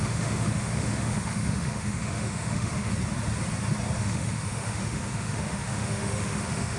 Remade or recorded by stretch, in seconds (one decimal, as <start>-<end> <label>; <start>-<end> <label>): 0.0-2.9 remade; 2.9-4.0 recorded; 4.0-6.8 remade